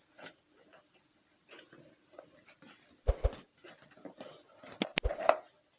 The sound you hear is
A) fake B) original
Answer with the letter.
B